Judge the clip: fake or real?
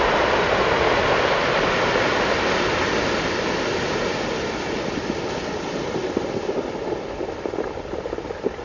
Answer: real